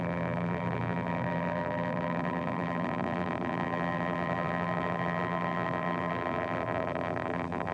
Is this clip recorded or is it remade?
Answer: remade